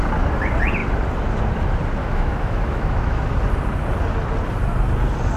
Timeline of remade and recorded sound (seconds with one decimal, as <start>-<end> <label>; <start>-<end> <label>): 0.0-2.0 recorded; 2.0-3.2 remade; 3.2-5.4 recorded